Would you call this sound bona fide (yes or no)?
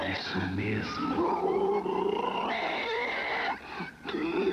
no